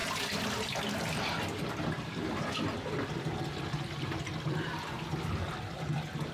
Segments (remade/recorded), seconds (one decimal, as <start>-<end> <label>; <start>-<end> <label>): 0.0-6.3 recorded